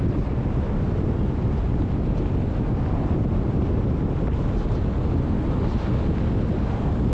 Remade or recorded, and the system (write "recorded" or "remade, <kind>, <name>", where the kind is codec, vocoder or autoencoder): recorded